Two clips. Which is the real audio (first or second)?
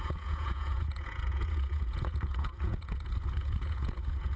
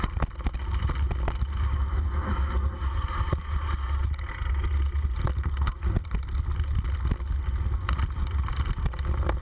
second